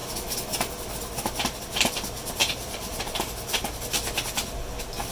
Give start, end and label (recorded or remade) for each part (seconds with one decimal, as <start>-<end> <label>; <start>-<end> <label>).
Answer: 0.0-2.4 recorded; 2.4-3.0 remade; 3.0-5.1 recorded